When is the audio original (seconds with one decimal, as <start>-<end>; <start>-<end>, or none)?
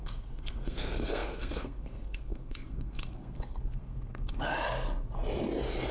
4.5-5.9